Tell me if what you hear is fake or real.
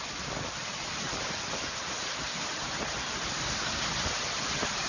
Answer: real